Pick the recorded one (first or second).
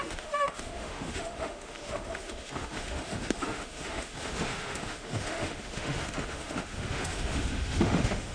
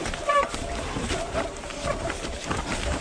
second